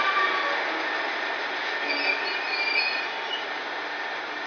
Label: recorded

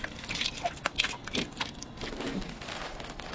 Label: recorded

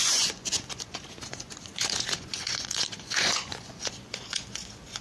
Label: remade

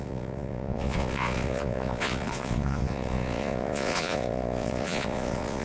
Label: remade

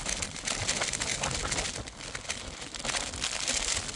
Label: recorded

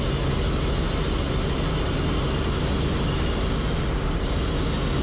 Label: recorded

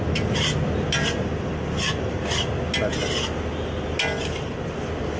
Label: recorded